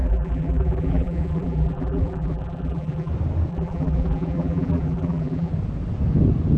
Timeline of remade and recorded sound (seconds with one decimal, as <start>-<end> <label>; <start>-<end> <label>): 0.0-3.1 remade; 3.1-3.5 recorded; 3.5-5.5 remade; 5.5-6.6 recorded